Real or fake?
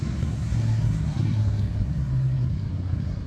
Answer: fake